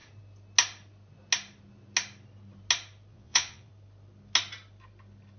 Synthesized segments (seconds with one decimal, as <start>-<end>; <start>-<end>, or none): 3.1-3.7